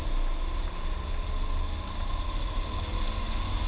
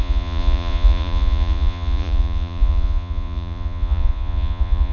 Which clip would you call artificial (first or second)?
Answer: second